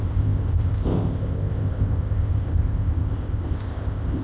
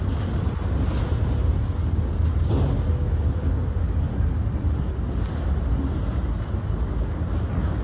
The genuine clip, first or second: second